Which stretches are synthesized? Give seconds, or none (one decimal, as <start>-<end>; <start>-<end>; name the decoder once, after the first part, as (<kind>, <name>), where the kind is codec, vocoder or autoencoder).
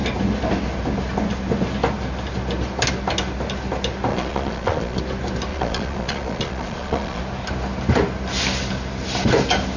4.1-5.0 (vocoder, Vocos); 5.5-7.2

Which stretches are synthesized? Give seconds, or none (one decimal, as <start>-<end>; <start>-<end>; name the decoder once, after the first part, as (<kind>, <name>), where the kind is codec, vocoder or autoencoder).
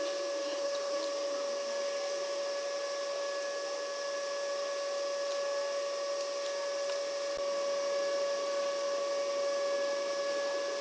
0.4-1.0 (codec, HILCodec)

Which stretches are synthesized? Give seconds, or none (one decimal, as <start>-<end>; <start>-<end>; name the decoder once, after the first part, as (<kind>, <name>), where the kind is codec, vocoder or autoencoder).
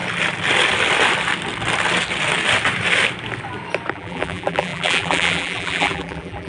3.9-6.5 (vocoder, BigVGAN v2)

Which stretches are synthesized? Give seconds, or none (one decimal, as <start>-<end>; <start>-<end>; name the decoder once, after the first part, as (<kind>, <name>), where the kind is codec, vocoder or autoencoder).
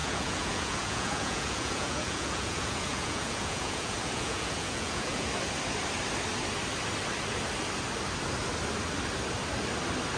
0.0-5.3 (vocoder, Vocos)